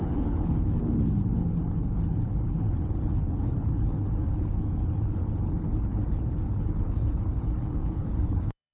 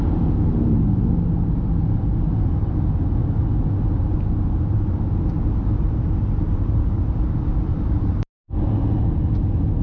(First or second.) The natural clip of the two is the second